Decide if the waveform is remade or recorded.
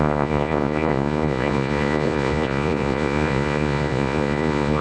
remade